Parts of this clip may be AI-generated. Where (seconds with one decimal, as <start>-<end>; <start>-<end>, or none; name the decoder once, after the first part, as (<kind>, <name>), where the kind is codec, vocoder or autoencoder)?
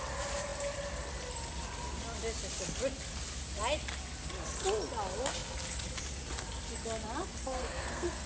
7.4-8.3 (codec, SNAC)